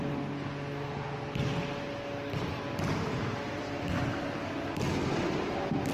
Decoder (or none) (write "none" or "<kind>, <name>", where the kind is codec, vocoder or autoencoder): none